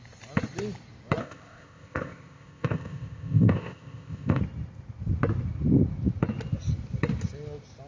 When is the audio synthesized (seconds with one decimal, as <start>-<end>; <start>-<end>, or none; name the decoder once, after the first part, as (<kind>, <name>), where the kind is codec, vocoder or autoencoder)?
1.2-4.4 (codec, ZipCodec)